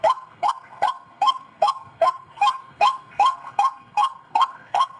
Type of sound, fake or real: fake